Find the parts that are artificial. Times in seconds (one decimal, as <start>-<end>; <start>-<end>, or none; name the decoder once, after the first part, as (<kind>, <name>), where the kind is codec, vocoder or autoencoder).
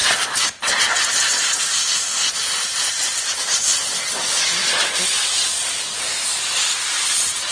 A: 1.1-2.1 (vocoder, BigVGAN v2); 2.7-4.6; 6.4-7.5